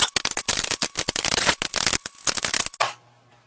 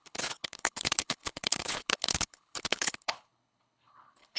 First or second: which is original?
first